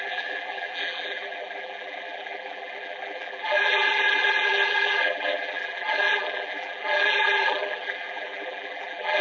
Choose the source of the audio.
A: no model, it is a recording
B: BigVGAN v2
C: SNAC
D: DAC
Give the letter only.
B